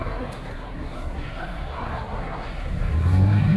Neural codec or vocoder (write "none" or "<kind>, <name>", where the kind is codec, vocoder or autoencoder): codec, SNAC